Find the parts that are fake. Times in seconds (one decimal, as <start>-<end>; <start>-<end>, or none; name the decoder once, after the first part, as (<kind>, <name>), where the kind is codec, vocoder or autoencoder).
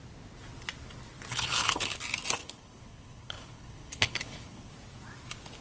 1.3-2.0 (codec, HILCodec); 2.4-4.7